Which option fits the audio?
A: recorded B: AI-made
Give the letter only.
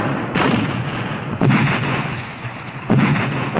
B